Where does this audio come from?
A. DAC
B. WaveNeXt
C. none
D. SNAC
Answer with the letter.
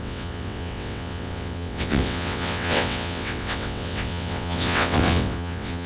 B